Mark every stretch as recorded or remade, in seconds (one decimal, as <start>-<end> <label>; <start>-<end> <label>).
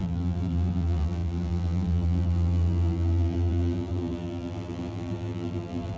0.0-6.0 remade